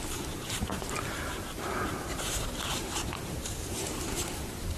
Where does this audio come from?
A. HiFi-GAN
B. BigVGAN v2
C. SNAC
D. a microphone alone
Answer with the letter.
B